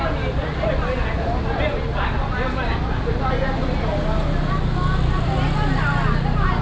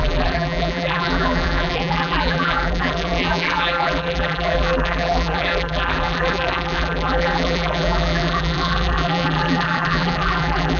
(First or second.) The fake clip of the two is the second